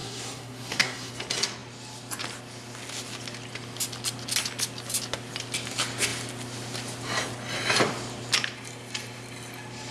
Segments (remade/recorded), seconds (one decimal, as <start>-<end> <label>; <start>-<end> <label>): 0.0-1.1 remade; 1.1-9.9 recorded